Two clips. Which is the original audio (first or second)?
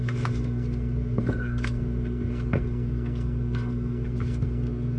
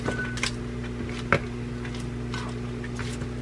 second